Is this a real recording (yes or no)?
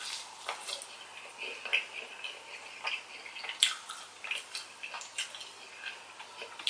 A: yes